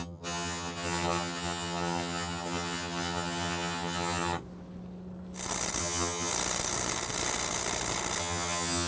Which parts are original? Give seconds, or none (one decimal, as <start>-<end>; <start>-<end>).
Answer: 4.4-5.8; 6.3-8.2